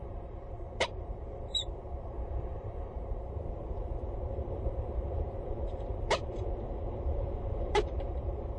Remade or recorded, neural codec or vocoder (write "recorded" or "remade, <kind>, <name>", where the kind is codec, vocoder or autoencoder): remade, vocoder, BigVGAN v2